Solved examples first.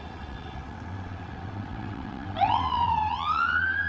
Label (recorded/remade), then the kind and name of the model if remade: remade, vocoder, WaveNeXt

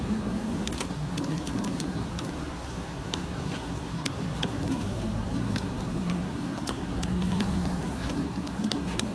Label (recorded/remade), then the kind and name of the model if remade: remade, codec, SNAC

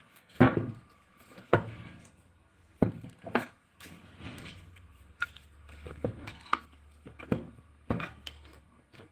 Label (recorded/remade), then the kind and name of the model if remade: remade, codec, SNAC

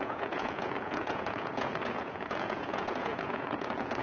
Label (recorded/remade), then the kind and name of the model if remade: remade, vocoder, Vocos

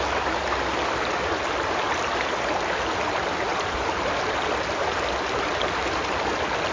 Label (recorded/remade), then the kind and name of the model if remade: recorded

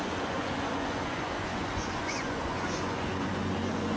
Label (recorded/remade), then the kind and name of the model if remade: remade, vocoder, Vocos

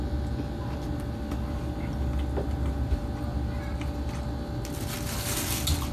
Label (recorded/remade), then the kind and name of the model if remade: recorded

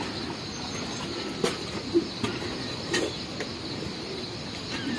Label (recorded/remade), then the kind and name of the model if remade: recorded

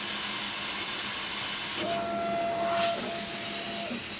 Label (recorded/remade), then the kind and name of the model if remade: recorded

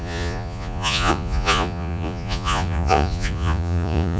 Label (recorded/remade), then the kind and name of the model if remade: remade, vocoder, Vocos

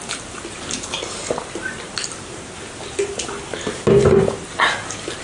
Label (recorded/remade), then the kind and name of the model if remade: recorded